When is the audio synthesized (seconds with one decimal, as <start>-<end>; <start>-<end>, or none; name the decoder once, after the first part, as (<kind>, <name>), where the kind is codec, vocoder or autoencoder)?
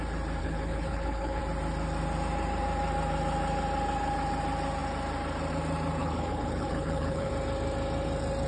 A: 0.4-1.4 (codec, HILCodec); 6.0-7.3